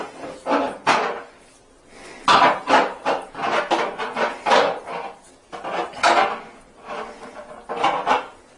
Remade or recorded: recorded